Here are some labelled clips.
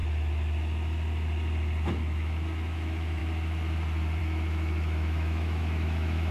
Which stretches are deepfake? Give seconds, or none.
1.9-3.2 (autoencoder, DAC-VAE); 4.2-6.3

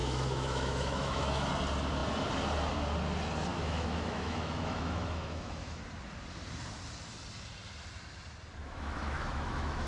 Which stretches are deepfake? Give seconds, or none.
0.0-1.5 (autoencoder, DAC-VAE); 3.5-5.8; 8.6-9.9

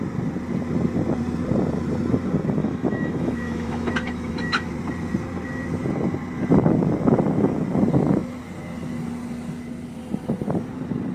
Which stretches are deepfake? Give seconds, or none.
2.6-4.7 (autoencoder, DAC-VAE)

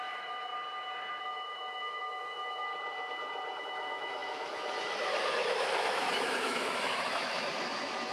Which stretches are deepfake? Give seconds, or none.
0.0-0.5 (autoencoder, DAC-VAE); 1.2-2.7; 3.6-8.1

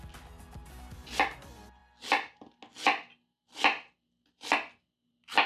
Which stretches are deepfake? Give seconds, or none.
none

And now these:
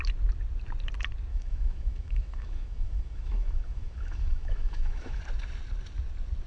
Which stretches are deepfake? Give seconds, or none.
1.3-5.2 (autoencoder, DAC-VAE)